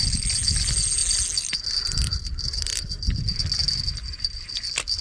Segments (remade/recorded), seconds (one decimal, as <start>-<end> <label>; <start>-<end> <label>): 0.0-5.0 recorded